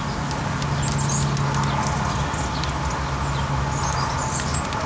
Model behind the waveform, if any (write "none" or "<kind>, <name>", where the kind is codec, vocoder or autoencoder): none